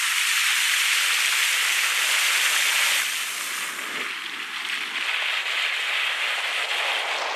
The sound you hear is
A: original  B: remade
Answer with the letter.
A